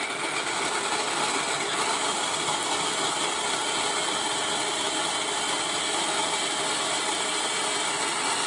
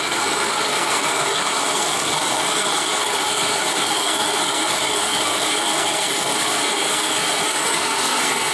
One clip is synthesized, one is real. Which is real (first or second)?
first